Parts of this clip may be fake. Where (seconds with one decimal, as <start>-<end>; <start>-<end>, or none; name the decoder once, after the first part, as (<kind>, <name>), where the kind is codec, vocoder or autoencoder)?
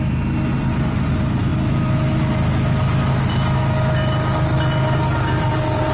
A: none